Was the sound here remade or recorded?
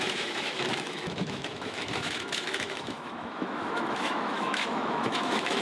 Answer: remade